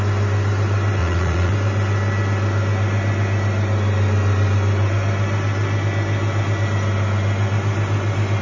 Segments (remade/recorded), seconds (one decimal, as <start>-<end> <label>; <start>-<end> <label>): 0.0-1.0 recorded; 1.0-1.5 remade; 1.5-8.4 recorded